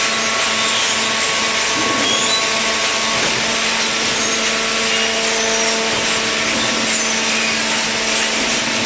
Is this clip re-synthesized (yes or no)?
no